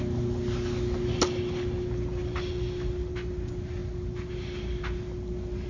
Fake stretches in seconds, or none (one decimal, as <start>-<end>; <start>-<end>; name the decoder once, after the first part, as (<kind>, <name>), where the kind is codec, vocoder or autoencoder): none